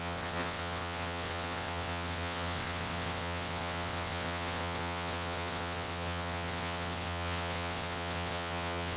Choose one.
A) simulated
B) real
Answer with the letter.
A